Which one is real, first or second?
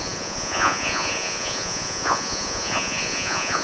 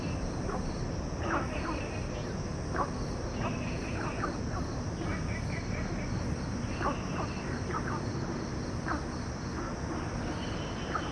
second